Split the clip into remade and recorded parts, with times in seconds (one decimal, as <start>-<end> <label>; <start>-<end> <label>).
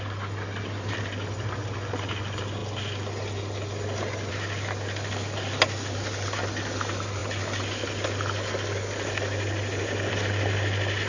0.0-11.1 recorded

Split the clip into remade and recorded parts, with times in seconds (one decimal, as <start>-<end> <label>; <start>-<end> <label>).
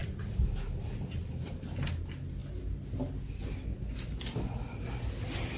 0.0-5.6 recorded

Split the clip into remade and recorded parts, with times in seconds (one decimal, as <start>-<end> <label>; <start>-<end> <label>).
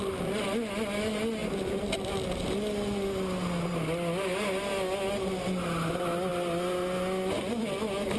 0.0-8.2 recorded